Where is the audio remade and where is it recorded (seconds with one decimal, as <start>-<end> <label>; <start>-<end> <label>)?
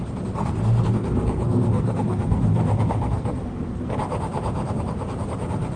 0.0-0.4 recorded; 0.4-3.9 remade; 3.9-5.8 recorded